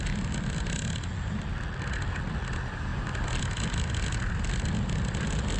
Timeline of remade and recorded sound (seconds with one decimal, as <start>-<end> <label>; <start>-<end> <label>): 0.0-5.6 recorded